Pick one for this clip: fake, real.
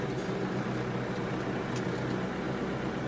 real